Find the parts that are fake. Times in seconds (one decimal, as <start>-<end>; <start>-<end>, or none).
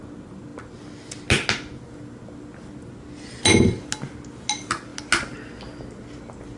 none